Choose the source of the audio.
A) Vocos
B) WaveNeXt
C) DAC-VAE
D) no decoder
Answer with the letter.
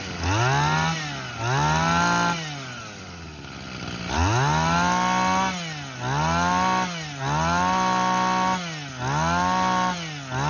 D